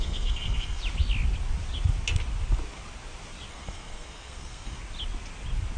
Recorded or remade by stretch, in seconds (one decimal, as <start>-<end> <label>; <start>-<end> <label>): 0.0-0.8 remade; 0.8-3.5 recorded; 3.5-4.8 remade; 4.8-5.8 recorded